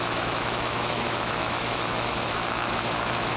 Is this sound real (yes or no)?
no